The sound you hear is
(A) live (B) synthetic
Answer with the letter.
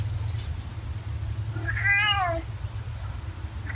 A